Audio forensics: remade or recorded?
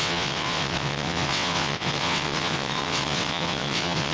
remade